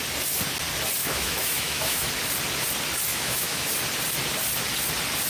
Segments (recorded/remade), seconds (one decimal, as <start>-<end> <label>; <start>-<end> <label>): 0.0-1.0 recorded; 1.0-2.1 remade; 2.1-3.1 recorded; 3.1-3.7 remade; 3.7-5.3 recorded